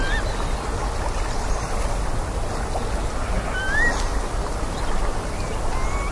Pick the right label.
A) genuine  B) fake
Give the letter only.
A